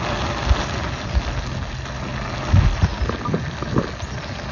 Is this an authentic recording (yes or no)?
yes